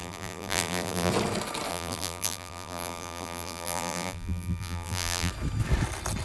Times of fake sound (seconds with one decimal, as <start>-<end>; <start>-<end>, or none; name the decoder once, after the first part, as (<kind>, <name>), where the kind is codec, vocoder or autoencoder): 0.0-1.1 (vocoder, BigVGAN v2); 1.7-5.3